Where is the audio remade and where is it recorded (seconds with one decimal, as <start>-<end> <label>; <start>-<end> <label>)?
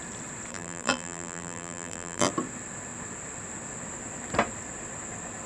0.0-0.5 recorded; 0.5-2.3 remade; 2.3-5.5 recorded